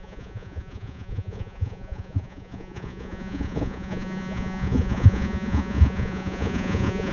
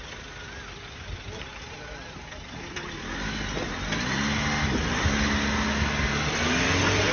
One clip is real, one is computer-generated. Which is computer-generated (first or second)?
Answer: first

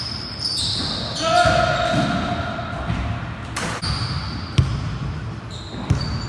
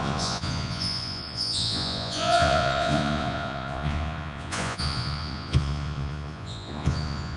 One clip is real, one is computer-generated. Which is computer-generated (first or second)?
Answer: second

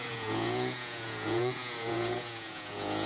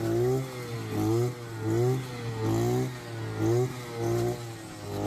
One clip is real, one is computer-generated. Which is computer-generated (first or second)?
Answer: first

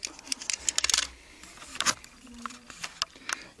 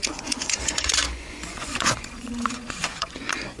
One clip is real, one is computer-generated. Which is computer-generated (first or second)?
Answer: second